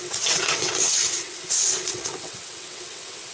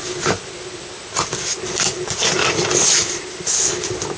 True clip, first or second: second